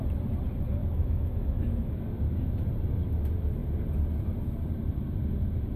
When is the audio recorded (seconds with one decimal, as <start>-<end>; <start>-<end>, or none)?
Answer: 0.0-0.8; 1.9-5.8